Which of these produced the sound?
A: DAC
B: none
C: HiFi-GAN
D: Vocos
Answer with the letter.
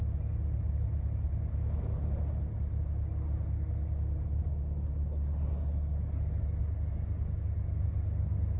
B